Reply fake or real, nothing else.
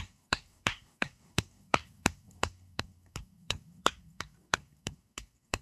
fake